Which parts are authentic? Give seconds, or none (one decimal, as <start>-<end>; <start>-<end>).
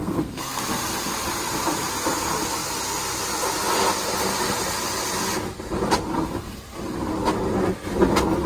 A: 0.6-8.5